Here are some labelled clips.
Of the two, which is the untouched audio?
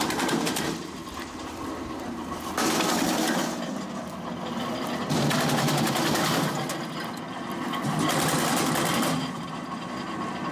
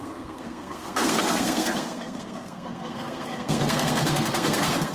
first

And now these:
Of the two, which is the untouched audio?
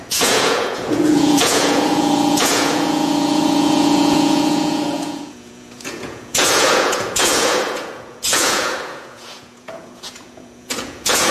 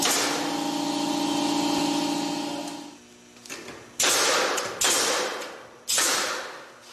second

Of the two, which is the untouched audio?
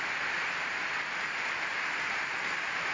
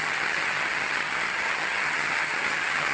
first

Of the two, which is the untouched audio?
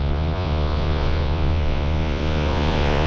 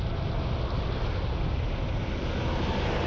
second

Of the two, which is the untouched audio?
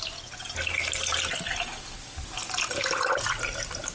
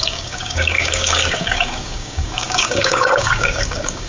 first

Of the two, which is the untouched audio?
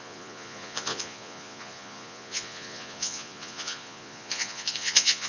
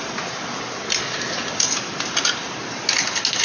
second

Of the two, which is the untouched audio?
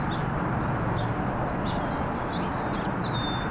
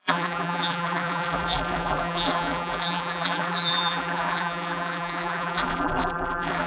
first